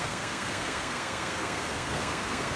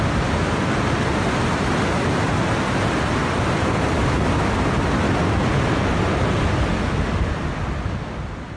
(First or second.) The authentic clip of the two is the second